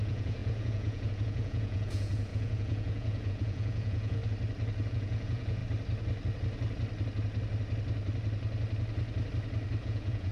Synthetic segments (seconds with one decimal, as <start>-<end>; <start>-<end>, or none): 0.0-4.2; 4.9-5.6; 9.8-10.3